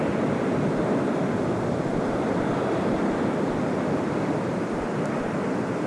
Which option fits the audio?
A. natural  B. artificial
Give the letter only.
B